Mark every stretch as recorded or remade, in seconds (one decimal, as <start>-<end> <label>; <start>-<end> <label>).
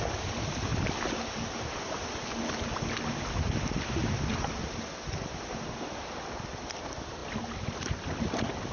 0.0-8.7 recorded